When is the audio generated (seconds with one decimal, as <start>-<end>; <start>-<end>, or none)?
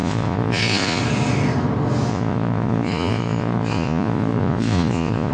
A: 0.0-1.0; 2.1-5.3